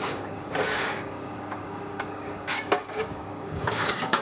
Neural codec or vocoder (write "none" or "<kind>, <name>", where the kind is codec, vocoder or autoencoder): codec, DAC